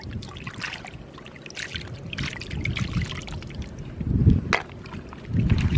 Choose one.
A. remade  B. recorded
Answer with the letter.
B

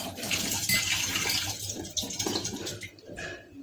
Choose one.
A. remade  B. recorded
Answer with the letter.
A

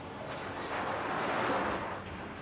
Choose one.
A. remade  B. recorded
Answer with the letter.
B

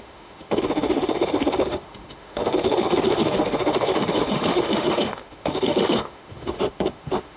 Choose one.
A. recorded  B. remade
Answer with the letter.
B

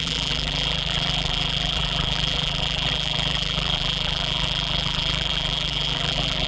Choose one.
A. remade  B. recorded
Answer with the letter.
A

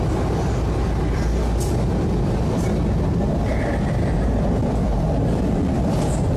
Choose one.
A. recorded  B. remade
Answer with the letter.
A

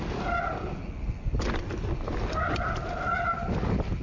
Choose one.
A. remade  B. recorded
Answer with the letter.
B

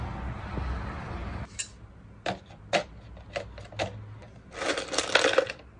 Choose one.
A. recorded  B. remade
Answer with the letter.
A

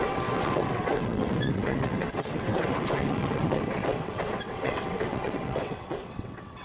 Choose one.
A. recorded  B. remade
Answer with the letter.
B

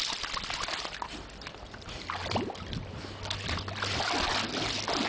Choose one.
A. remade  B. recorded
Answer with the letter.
B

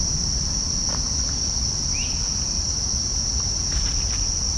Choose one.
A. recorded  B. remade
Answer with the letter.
A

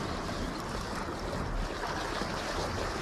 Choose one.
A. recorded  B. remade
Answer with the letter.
A